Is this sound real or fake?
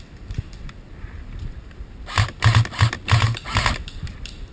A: real